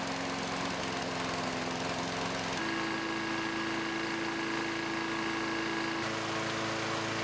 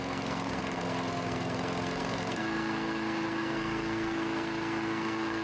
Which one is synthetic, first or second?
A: second